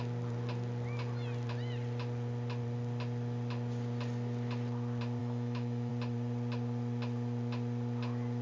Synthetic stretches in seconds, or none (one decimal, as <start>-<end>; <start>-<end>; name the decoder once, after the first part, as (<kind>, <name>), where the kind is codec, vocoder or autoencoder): 5.2-5.9 (autoencoder, DAC-VAE)